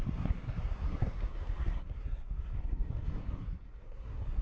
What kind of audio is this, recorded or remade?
remade